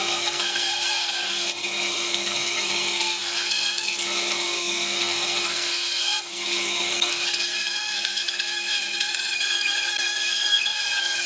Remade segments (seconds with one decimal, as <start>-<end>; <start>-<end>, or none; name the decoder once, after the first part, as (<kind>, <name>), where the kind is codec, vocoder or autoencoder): 0.0-11.3 (codec, SNAC)